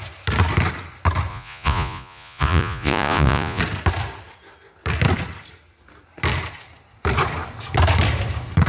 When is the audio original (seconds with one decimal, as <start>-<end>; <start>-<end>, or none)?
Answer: 0.0-1.3; 3.6-8.7